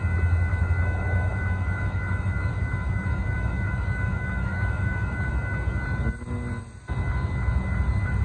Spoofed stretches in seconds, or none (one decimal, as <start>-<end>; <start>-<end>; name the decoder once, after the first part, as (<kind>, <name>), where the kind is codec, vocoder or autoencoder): 0.5-5.3 (autoencoder, DAC-VAE)